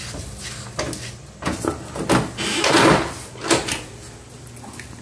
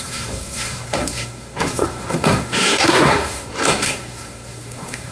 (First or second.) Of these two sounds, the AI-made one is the second